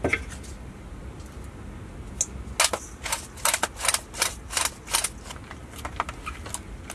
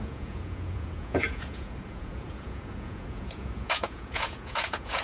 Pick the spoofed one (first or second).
second